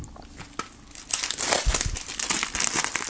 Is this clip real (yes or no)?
yes